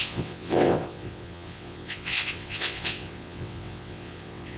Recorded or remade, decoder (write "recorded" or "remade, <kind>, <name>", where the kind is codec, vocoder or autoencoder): remade, vocoder, WaveNeXt